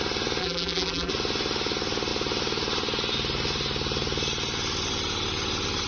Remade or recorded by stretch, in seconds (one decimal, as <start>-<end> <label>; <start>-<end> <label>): 0.0-0.4 recorded; 0.4-1.1 remade; 1.1-5.9 recorded

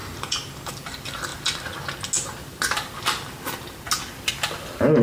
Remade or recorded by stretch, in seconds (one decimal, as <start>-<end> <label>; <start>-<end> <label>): 0.0-0.7 remade; 0.7-5.0 recorded

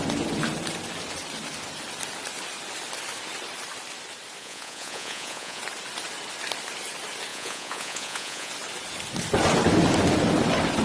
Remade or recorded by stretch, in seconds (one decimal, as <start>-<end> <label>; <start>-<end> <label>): 0.0-4.4 recorded; 4.4-5.6 remade; 5.6-7.3 recorded; 7.3-8.5 remade; 8.5-10.8 recorded